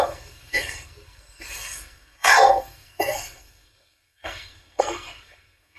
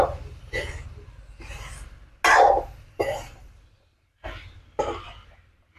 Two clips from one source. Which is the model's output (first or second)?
first